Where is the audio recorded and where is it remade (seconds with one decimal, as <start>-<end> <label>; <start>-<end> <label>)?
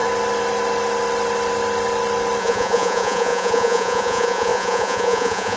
0.0-2.4 recorded; 2.4-5.6 remade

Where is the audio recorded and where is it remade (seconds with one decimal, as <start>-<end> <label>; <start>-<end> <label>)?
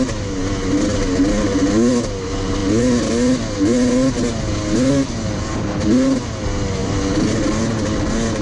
0.0-6.8 recorded; 6.8-7.6 remade; 7.6-8.4 recorded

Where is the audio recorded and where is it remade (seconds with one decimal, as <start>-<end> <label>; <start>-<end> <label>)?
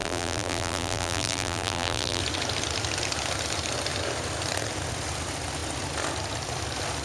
0.0-2.2 remade; 2.2-7.0 recorded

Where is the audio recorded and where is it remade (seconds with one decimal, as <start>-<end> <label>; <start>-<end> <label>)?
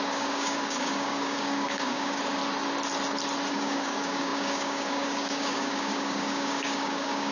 0.0-2.4 remade; 2.4-3.5 recorded; 3.5-7.3 remade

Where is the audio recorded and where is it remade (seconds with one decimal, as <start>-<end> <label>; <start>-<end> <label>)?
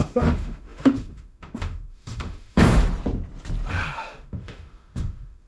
0.0-2.8 remade; 2.8-3.7 recorded; 3.7-5.5 remade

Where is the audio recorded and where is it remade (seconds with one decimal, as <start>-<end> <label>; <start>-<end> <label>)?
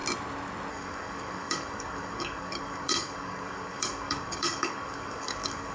0.0-0.7 recorded; 0.7-5.7 remade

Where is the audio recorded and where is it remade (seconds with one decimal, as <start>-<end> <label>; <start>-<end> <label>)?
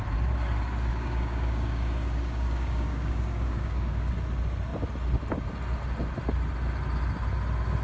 0.0-0.9 recorded; 0.9-4.1 remade; 4.1-7.8 recorded